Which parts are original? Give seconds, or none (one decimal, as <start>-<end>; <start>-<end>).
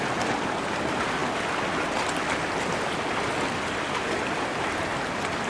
0.0-5.5